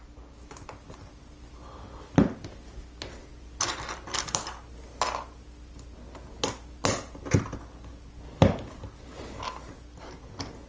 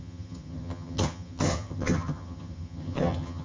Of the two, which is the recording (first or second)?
first